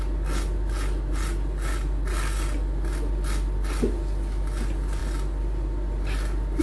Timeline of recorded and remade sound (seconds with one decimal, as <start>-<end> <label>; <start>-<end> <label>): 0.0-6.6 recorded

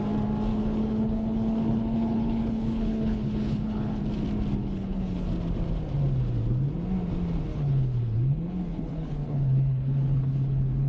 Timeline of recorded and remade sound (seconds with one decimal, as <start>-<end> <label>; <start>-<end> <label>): 0.0-0.5 recorded; 0.5-4.0 remade; 4.0-4.6 recorded; 4.6-5.3 remade; 5.3-7.5 recorded; 7.5-10.9 remade

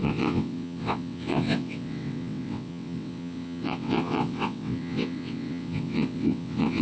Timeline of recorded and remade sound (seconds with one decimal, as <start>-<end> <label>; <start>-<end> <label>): 0.0-6.8 remade

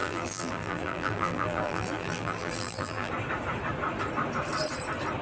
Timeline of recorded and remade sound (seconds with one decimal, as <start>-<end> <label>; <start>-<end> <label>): 0.0-3.1 remade; 3.1-5.2 recorded

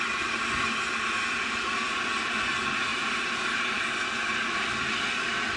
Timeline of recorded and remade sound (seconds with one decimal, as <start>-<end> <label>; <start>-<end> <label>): 0.0-2.9 recorded; 2.9-3.9 remade; 3.9-5.6 recorded